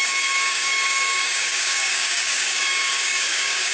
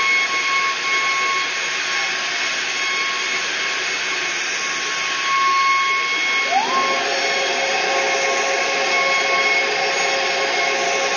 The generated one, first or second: first